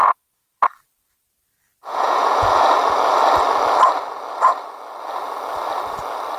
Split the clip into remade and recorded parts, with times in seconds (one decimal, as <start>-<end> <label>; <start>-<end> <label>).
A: 0.0-0.6 remade; 0.6-1.9 recorded; 1.9-2.6 remade; 2.6-6.4 recorded